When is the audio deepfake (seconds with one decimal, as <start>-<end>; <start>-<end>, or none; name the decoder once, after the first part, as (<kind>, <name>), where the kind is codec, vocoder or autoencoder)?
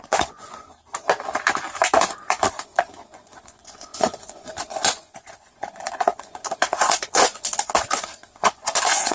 0.0-0.7 (vocoder, Vocos); 2.0-9.1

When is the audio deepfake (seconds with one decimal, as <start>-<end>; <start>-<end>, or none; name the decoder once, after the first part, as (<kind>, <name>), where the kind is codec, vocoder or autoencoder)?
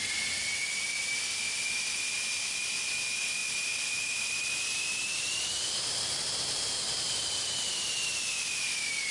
none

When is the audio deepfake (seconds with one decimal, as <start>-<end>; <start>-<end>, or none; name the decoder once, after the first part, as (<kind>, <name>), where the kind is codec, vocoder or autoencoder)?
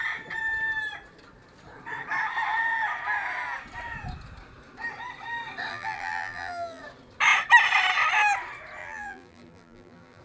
5.7-6.8 (vocoder, BigVGAN v2); 8.8-10.2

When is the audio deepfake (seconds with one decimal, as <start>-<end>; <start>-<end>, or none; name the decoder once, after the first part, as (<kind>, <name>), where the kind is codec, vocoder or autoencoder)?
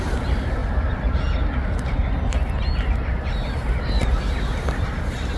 none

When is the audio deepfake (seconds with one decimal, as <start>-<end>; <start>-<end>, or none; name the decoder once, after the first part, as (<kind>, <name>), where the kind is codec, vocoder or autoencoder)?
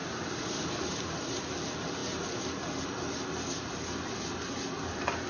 0.0-1.5 (vocoder, BigVGAN v2)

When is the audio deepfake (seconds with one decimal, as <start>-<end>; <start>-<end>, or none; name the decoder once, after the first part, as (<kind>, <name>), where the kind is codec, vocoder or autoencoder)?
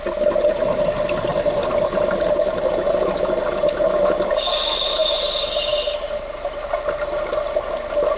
none